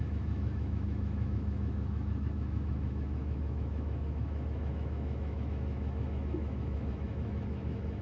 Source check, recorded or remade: remade